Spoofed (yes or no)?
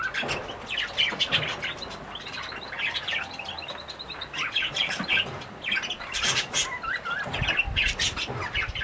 no